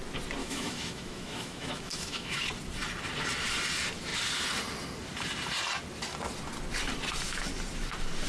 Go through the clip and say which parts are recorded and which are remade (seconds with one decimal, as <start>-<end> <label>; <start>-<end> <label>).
0.0-0.4 recorded; 0.4-2.4 remade; 2.4-8.3 recorded